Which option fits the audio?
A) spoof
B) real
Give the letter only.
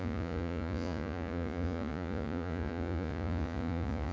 A